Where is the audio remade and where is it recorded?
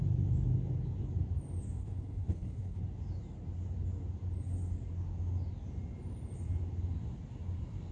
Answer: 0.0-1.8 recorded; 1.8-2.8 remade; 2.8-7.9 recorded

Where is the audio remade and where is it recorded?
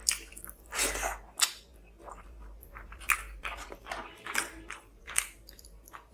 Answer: 0.0-0.5 recorded; 0.5-6.1 remade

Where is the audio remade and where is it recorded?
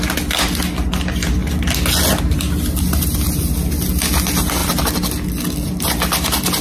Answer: 0.0-6.6 recorded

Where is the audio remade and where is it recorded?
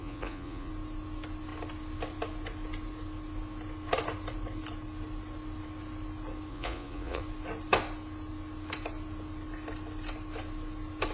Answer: 0.0-0.7 remade; 0.7-6.5 recorded; 6.5-7.2 remade; 7.2-11.1 recorded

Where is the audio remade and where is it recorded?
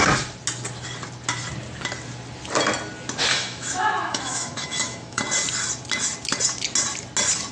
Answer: 0.0-3.3 recorded; 3.3-5.2 remade; 5.2-7.5 recorded